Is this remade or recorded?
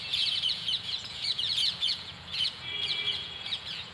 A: remade